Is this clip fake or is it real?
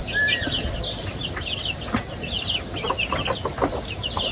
real